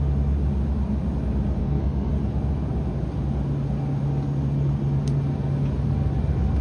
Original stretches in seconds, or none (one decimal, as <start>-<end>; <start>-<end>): 0.0-1.6; 2.1-6.6